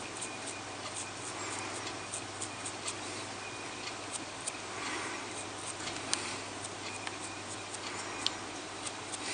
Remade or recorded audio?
recorded